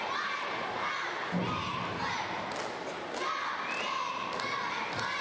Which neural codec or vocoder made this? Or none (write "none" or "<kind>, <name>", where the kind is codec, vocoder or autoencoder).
none